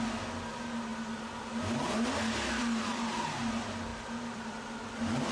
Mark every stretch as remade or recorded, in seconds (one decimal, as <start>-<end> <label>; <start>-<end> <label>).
0.0-3.9 recorded; 3.9-4.5 remade; 4.5-5.3 recorded